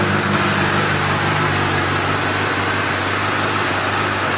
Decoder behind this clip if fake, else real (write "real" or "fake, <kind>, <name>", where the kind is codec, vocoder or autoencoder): real